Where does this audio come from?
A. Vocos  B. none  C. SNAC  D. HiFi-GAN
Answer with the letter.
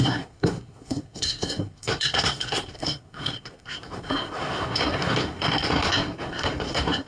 C